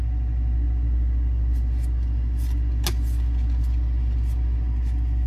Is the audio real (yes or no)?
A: yes